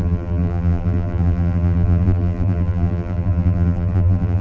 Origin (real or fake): fake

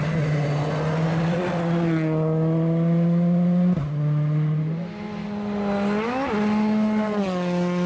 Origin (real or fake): real